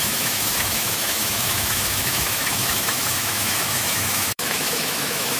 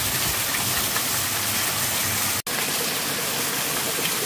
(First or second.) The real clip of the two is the second